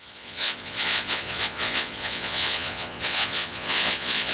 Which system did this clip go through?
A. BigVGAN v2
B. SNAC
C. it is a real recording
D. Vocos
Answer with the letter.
D